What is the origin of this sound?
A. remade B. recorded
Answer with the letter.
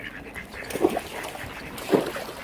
B